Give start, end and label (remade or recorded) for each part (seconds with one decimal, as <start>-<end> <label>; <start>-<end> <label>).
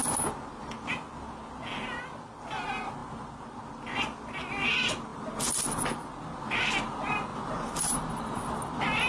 0.0-5.1 recorded; 5.1-5.6 remade; 5.6-7.3 recorded; 7.3-8.6 remade; 8.6-9.1 recorded